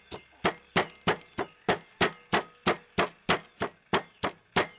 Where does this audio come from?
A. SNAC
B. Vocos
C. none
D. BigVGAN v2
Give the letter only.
C